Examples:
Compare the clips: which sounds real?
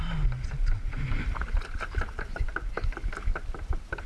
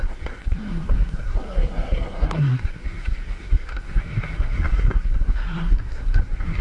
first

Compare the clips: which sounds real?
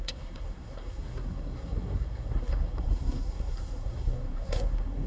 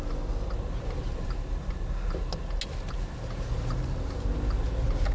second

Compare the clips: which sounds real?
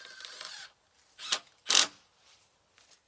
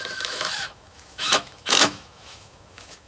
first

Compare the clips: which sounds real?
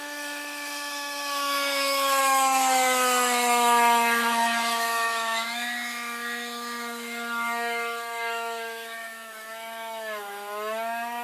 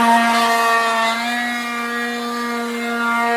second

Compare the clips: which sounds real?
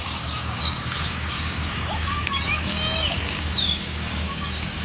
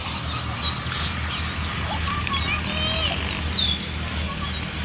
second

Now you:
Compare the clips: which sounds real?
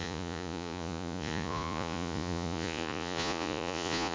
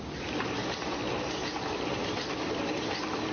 second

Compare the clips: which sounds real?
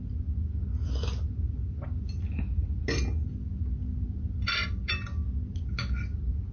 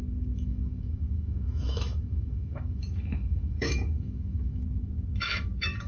first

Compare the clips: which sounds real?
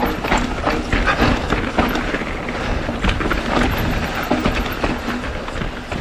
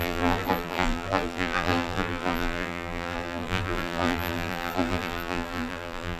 first